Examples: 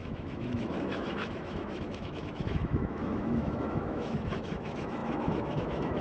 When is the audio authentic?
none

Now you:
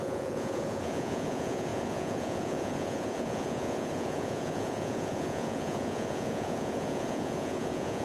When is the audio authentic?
none

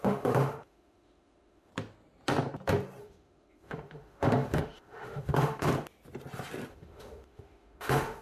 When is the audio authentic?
1.7-3.0; 5.7-6.7

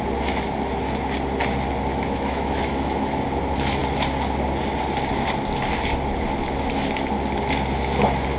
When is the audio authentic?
0.0-1.9; 3.2-8.4